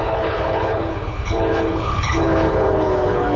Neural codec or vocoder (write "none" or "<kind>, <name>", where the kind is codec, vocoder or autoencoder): codec, HILCodec